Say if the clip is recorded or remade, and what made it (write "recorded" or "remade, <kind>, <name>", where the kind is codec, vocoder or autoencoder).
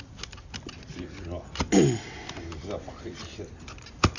recorded